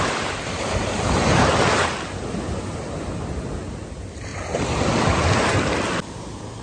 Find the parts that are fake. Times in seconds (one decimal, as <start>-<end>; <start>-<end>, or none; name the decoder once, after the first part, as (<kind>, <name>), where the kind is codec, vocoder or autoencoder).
none